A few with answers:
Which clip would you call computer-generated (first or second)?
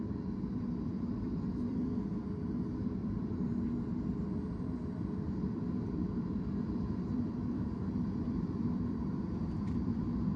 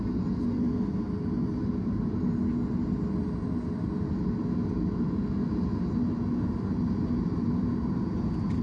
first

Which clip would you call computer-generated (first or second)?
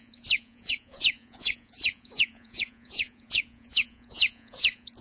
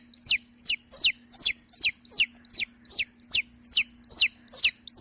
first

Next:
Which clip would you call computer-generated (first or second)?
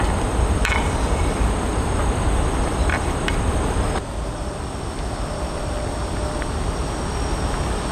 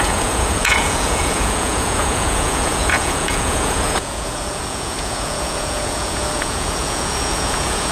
second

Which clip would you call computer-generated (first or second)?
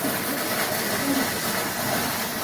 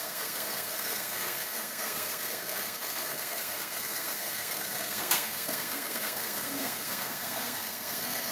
second